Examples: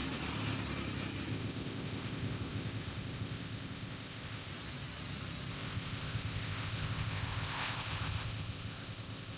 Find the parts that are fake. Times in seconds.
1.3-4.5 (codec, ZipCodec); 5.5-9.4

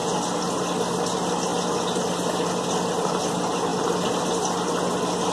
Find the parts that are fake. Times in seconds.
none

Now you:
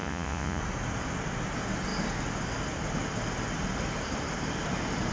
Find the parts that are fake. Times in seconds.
0.0-0.6 (vocoder, Vocos)